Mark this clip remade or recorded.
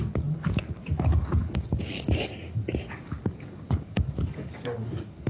remade